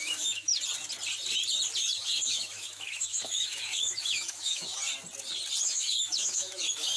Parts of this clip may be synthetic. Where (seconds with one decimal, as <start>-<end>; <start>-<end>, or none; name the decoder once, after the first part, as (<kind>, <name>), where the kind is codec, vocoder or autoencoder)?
0.0-0.5 (autoencoder, DAC-VAE); 1.8-4.7; 5.6-7.0